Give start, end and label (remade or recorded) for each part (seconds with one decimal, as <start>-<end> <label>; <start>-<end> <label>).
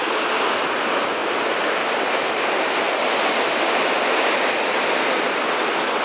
0.0-6.0 recorded